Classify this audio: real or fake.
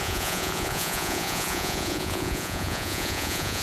fake